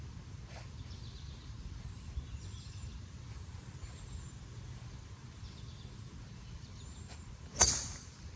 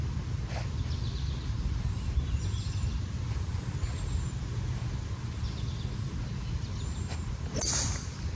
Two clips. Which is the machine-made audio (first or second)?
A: first